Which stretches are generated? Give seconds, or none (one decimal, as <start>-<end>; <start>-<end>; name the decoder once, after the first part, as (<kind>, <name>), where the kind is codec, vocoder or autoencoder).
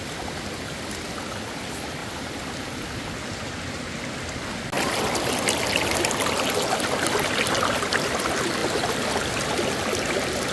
2.0-3.2 (vocoder, BigVGAN v2); 8.6-9.5